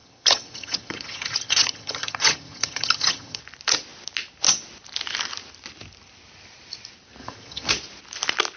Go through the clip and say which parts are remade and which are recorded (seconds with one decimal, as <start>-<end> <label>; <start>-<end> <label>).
0.0-3.4 remade; 3.4-7.2 recorded; 7.2-7.7 remade; 7.7-8.6 recorded